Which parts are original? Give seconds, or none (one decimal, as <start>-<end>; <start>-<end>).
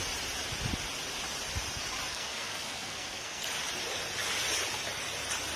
0.0-2.1; 3.4-5.6